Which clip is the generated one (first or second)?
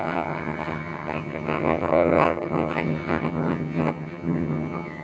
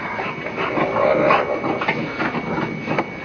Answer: first